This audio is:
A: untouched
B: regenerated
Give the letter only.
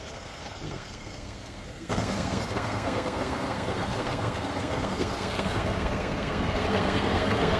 B